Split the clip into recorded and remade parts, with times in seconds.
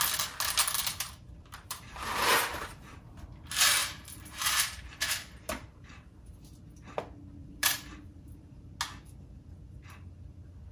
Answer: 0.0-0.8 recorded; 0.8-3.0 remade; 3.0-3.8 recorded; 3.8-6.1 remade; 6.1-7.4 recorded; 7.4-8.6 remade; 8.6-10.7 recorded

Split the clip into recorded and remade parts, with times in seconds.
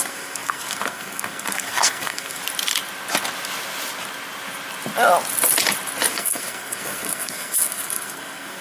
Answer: 0.0-2.4 remade; 2.4-6.1 recorded; 6.1-8.6 remade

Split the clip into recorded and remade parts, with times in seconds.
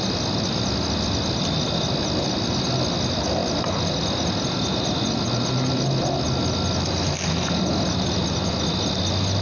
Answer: 0.0-9.4 recorded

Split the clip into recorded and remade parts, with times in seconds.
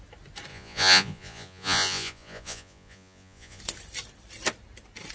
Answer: 0.0-0.5 recorded; 0.5-3.6 remade; 3.6-5.1 recorded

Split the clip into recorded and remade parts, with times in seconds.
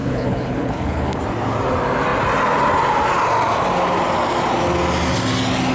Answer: 0.0-1.2 remade; 1.2-5.7 recorded